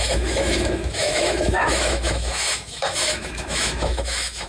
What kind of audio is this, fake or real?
fake